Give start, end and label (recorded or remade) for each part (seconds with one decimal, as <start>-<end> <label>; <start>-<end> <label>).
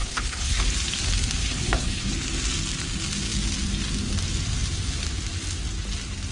0.0-0.6 remade; 0.6-1.4 recorded; 1.4-2.1 remade; 2.1-6.3 recorded